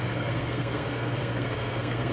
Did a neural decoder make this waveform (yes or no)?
yes